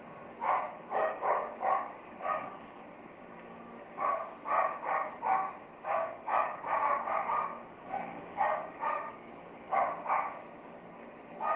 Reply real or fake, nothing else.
fake